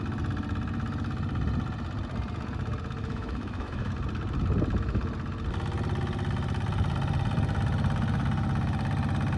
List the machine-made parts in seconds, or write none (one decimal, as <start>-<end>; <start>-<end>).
3.0-3.9